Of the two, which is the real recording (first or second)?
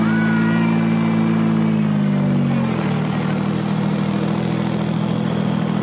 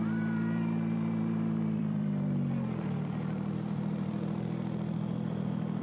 first